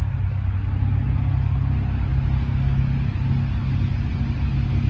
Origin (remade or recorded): recorded